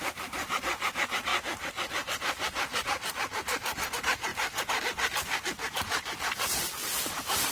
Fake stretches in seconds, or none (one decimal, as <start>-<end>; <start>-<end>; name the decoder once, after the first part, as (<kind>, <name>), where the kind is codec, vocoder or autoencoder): 0.0-7.5 (vocoder, BigVGAN v2)